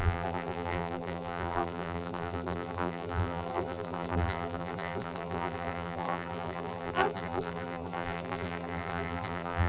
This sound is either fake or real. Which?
fake